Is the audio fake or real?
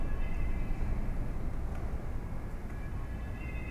real